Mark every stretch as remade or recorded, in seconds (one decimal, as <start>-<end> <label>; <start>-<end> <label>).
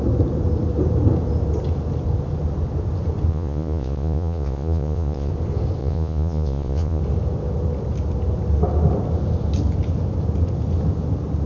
0.0-3.3 recorded; 3.3-5.3 remade; 5.3-5.8 recorded; 5.8-7.0 remade; 7.0-11.5 recorded